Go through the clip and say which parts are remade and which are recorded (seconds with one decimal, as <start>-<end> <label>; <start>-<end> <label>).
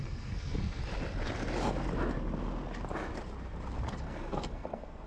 0.0-0.8 remade; 0.8-3.9 recorded; 3.9-5.1 remade